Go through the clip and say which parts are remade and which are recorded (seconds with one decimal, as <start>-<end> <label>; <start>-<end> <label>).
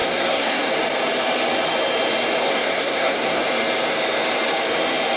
0.0-0.7 remade; 0.7-2.5 recorded; 2.5-3.4 remade; 3.4-5.2 recorded